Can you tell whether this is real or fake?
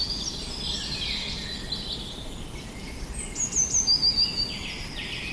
real